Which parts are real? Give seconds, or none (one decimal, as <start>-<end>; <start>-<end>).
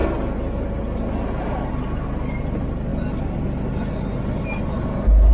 0.0-5.3